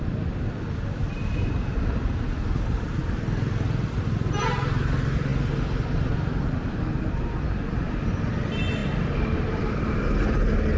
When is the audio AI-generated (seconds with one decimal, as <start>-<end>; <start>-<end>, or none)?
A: none